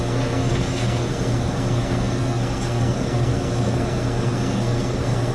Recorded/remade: remade